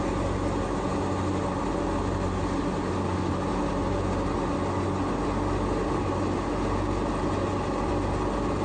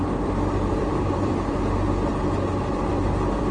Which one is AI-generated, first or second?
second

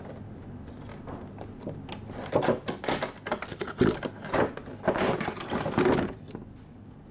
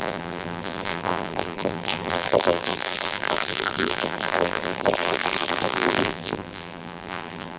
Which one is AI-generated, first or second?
second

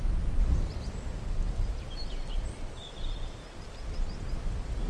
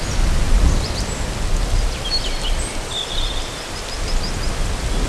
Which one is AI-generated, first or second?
first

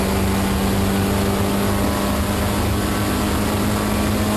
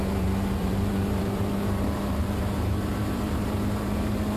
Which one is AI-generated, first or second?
second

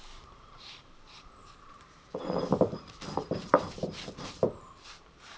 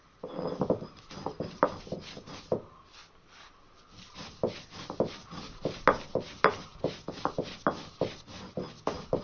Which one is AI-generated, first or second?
first